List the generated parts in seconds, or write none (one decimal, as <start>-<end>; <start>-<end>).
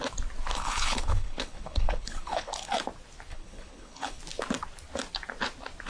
0.5-2.7; 3.3-4.2